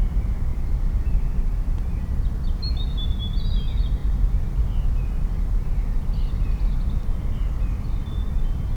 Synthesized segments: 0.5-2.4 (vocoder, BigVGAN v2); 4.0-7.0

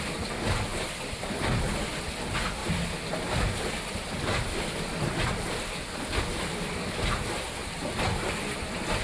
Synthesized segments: 0.7-2.2 (vocoder, BigVGAN v2); 2.6-6.2